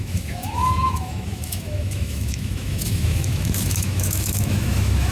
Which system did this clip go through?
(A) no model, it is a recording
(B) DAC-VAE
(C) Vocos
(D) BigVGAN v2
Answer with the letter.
B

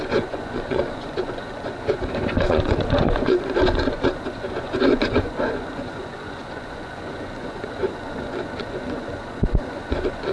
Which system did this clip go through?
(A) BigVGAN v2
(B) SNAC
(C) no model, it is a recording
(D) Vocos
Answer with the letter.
D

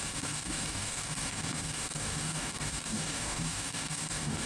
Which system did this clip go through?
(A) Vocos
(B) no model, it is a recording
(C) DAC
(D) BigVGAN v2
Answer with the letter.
C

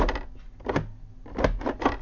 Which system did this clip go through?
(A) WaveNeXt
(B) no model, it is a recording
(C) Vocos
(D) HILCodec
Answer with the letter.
B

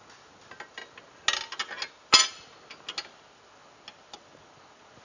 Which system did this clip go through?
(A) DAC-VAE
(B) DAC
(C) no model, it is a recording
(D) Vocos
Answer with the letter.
C